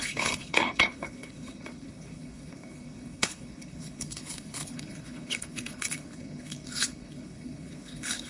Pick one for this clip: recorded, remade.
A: remade